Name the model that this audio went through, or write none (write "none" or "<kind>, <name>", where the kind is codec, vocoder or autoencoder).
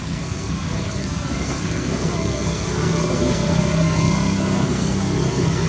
codec, SNAC